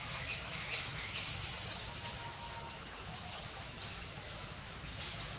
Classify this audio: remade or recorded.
remade